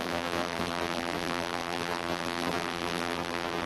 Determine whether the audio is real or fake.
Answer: fake